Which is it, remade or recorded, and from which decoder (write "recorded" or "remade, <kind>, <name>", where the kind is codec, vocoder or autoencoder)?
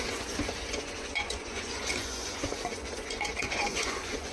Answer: remade, vocoder, Vocos